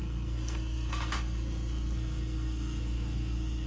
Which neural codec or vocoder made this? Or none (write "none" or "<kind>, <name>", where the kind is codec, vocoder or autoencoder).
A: codec, SNAC